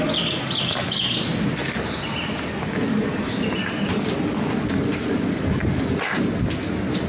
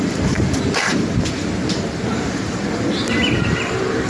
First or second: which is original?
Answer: first